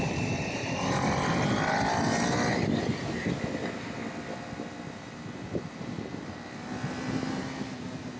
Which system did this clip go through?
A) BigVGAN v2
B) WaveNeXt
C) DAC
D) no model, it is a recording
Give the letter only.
D